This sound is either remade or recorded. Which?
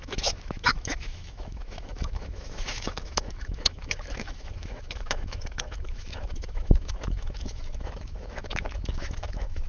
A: remade